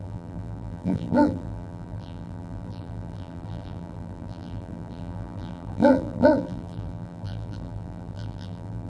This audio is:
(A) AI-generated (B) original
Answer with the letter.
A